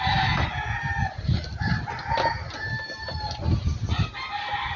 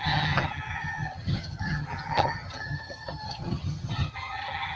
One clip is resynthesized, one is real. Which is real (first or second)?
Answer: first